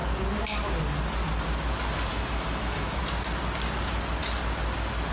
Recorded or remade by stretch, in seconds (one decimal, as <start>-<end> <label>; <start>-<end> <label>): 0.0-2.1 recorded; 2.1-3.0 remade; 3.0-5.1 recorded